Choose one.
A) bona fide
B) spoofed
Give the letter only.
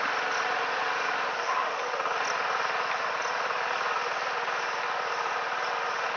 A